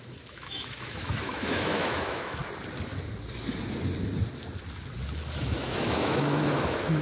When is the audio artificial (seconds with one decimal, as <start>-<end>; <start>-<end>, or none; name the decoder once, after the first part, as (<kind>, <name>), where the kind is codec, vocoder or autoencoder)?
0.0-2.4 (autoencoder, DAC-VAE); 5.4-7.0